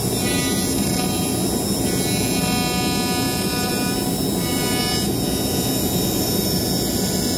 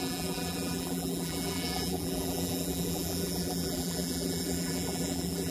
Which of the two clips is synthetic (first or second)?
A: second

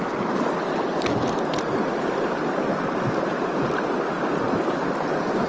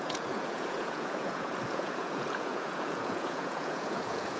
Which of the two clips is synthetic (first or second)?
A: second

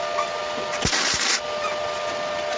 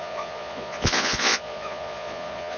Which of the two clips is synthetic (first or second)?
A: second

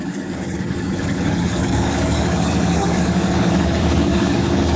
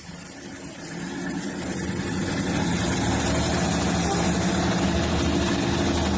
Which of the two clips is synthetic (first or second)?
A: first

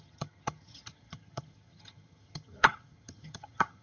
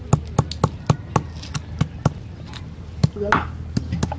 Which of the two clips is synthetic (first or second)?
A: first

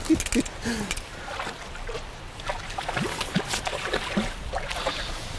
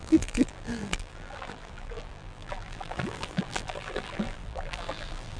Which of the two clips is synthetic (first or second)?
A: second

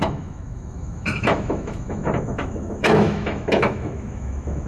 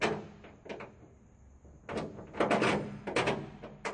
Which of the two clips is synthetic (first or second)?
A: first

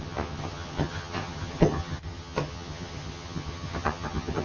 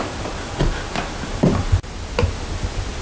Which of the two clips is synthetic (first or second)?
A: first